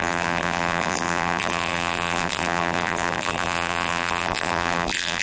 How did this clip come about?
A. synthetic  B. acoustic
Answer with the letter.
A